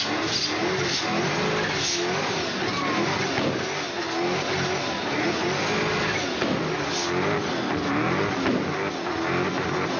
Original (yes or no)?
yes